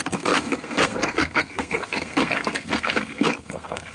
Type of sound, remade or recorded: remade